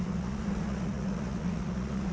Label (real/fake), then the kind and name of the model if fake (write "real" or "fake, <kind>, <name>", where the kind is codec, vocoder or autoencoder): fake, vocoder, Vocos